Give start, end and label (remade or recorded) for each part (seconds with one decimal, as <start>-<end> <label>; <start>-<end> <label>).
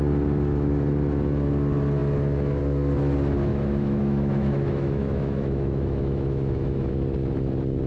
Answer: 0.0-3.5 recorded; 3.5-6.9 remade; 6.9-7.9 recorded